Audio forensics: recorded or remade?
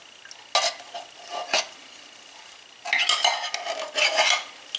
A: recorded